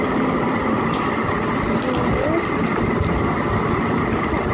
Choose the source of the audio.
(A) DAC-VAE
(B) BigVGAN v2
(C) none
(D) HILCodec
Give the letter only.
C